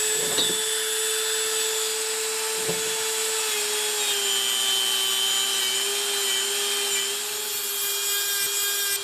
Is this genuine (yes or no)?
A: yes